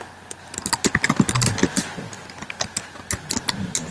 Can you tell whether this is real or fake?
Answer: real